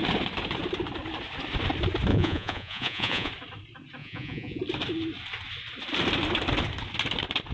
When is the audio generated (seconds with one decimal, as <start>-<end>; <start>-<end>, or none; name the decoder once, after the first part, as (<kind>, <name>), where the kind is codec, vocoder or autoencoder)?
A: 2.1-3.3 (vocoder, Vocos); 4.0-4.6